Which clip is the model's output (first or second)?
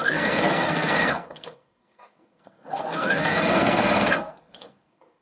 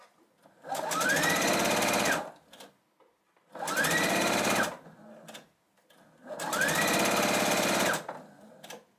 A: first